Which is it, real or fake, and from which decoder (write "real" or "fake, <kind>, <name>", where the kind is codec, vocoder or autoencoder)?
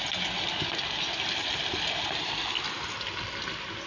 real